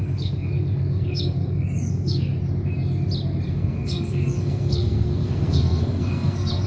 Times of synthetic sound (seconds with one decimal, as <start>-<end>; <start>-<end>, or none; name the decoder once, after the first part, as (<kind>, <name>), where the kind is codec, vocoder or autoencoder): 0.0-2.3 (codec, SNAC); 3.5-6.7